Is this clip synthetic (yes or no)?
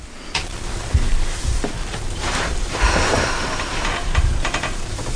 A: yes